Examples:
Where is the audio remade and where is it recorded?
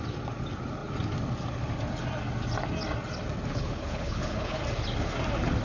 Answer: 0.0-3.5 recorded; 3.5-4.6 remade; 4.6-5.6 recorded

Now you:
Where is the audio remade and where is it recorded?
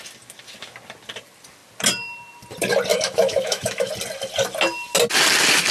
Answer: 0.0-2.9 recorded; 2.9-3.9 remade; 3.9-5.7 recorded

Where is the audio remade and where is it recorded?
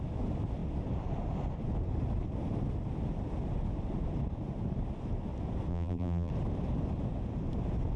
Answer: 0.0-5.7 recorded; 5.7-6.3 remade; 6.3-8.0 recorded